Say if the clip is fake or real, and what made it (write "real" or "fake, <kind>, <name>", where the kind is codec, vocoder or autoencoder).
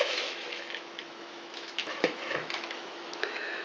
fake, autoencoder, DAC-VAE